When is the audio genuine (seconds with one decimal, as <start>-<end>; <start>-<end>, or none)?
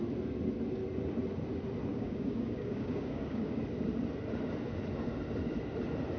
0.0-1.9; 3.6-6.2